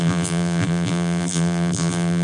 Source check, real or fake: fake